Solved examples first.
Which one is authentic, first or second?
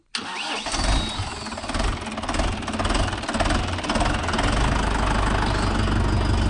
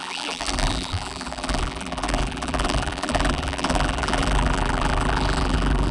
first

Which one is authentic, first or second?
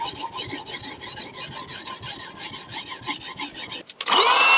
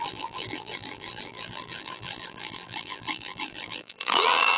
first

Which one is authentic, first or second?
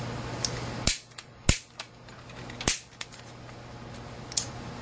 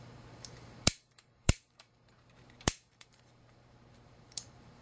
first